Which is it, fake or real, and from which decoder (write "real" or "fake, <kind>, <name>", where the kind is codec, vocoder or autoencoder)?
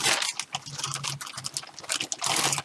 real